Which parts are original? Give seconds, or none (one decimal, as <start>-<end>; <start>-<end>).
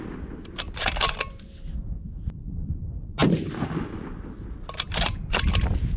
0.0-6.0